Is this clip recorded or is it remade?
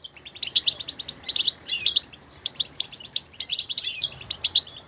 remade